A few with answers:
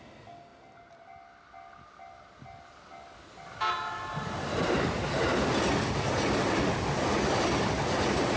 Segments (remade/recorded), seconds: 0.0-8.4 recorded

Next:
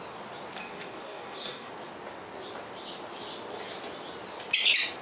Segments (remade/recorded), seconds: 0.0-0.6 recorded; 0.6-1.7 remade; 1.7-5.0 recorded

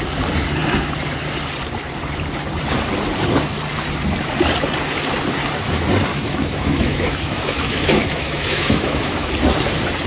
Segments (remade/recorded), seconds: 0.0-6.1 recorded; 6.1-9.3 remade; 9.3-10.1 recorded

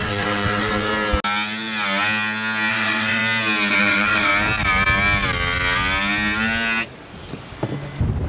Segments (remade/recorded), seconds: 0.0-0.9 remade; 0.9-2.7 recorded; 2.7-3.2 remade; 3.2-3.8 recorded; 3.8-4.3 remade; 4.3-8.3 recorded